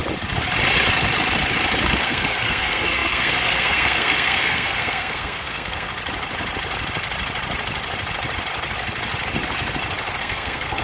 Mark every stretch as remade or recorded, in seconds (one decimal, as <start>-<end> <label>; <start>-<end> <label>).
0.0-2.0 recorded; 2.0-5.9 remade; 5.9-10.2 recorded; 10.2-10.8 remade